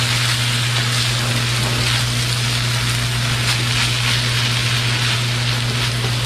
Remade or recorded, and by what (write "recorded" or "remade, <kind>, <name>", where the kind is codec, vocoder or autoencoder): recorded